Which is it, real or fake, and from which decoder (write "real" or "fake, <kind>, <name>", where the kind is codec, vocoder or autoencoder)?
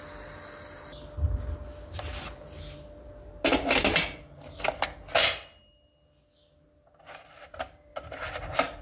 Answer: real